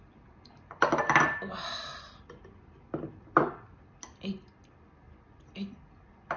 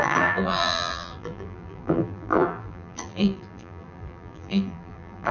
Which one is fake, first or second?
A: second